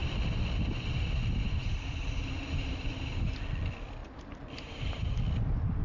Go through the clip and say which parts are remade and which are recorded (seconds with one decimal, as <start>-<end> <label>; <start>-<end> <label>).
0.0-2.4 remade; 2.4-4.0 recorded; 4.0-4.9 remade; 4.9-5.8 recorded